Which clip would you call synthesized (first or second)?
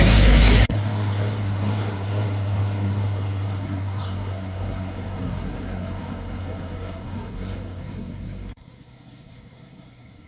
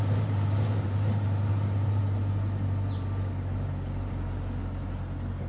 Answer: first